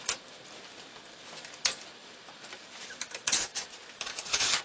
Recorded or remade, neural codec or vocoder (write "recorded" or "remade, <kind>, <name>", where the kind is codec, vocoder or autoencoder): recorded